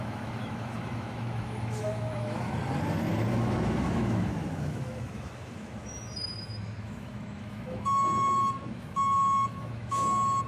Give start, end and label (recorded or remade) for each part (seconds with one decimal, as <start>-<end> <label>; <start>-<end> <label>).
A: 0.0-2.6 remade; 2.6-3.3 recorded; 3.3-10.5 remade